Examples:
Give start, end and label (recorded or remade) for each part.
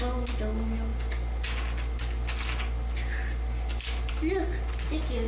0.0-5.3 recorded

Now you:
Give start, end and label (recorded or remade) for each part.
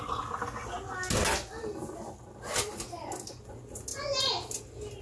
0.0-5.0 recorded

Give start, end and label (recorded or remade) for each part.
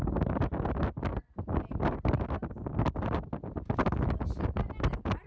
0.0-5.3 recorded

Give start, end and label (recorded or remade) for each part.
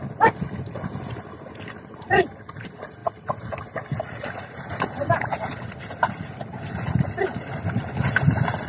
0.0-8.7 remade